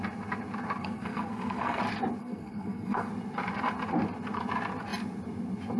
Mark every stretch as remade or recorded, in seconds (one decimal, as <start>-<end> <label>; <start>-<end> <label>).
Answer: 0.0-0.8 recorded; 0.8-1.8 remade; 1.8-2.2 recorded; 2.2-3.1 remade; 3.1-5.8 recorded